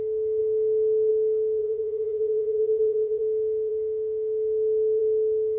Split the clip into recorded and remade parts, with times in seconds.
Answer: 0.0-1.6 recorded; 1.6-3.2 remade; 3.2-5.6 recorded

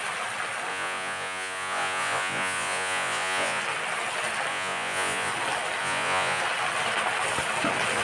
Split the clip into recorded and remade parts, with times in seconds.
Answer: 0.0-0.7 recorded; 0.7-3.6 remade; 3.6-4.5 recorded; 4.5-5.3 remade; 5.3-5.8 recorded; 5.8-6.4 remade; 6.4-8.0 recorded

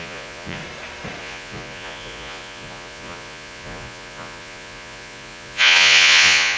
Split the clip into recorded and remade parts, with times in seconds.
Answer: 0.0-0.6 remade; 0.6-1.2 recorded; 1.2-6.6 remade

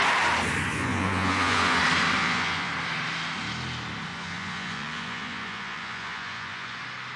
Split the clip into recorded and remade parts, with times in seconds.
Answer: 0.0-0.7 recorded; 0.7-1.8 remade; 1.8-2.2 recorded; 2.2-2.7 remade; 2.7-4.1 recorded; 4.1-6.8 remade; 6.8-7.2 recorded

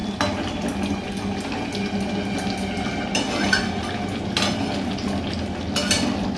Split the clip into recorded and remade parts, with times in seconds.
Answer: 0.0-6.4 recorded

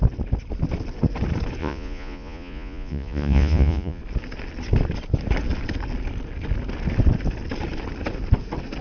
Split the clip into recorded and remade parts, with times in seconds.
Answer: 0.0-1.6 recorded; 1.6-4.0 remade; 4.0-8.8 recorded

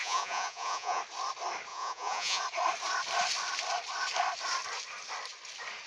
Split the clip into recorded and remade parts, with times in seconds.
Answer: 0.0-1.0 remade; 1.0-1.7 recorded; 1.7-2.4 remade; 2.4-5.9 recorded

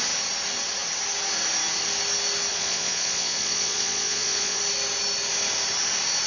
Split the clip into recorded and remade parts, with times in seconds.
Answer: 0.0-2.5 recorded; 2.5-4.6 remade; 4.6-6.3 recorded